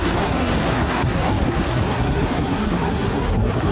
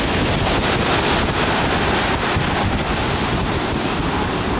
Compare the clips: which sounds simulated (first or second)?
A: first